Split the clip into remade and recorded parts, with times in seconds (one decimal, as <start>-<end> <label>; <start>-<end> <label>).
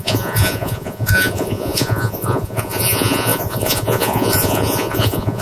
0.0-5.4 remade